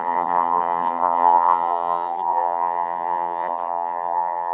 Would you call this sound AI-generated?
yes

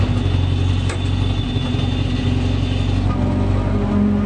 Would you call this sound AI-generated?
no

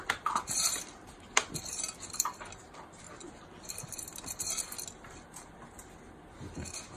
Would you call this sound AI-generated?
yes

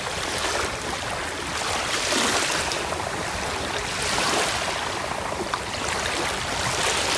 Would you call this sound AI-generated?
no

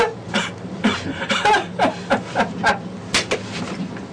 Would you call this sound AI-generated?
no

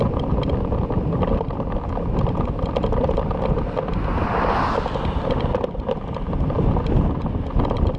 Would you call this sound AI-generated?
no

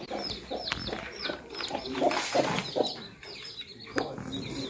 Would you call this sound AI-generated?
no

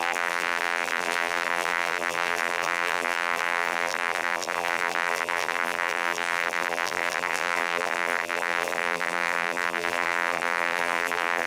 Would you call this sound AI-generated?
yes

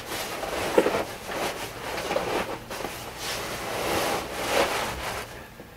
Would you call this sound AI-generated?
no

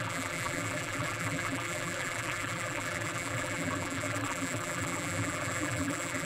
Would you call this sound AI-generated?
yes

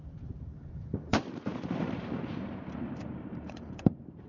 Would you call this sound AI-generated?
yes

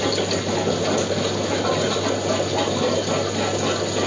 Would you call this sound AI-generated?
no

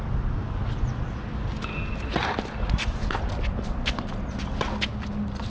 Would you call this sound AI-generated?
no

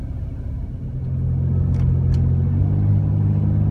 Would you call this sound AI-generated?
no